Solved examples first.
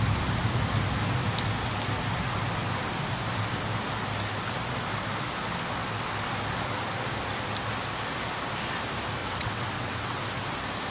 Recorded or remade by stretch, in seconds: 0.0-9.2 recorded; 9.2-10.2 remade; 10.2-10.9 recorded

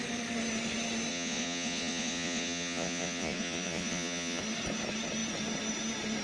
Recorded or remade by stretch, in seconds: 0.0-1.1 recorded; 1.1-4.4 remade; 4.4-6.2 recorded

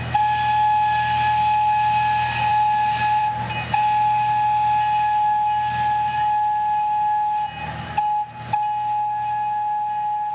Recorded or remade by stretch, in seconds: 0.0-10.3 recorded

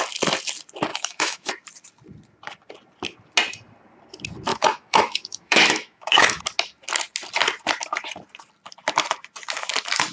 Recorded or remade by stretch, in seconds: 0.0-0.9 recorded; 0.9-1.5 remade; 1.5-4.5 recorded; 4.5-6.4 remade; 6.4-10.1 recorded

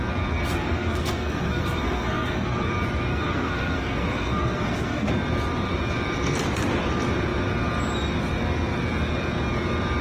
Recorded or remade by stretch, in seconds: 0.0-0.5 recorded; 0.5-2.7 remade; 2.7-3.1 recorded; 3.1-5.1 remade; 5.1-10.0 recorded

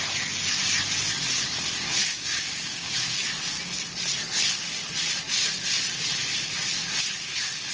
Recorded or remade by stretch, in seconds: 0.0-2.0 recorded; 2.0-2.9 remade; 2.9-7.7 recorded